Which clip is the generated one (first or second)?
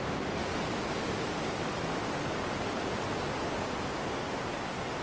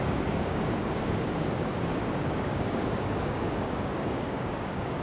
second